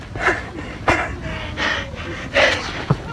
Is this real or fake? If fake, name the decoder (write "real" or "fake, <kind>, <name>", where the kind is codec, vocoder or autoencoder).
real